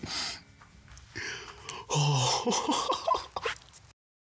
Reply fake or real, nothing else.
real